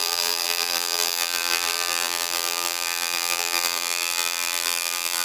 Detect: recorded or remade remade